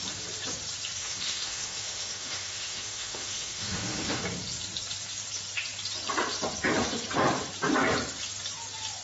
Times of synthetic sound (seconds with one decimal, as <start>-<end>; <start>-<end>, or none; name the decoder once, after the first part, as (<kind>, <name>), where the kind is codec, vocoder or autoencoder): 1.0-4.2 (autoencoder, DAC-VAE)